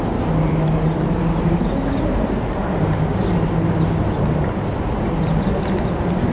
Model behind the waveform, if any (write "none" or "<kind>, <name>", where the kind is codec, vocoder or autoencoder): none